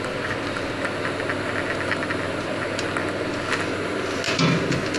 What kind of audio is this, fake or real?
real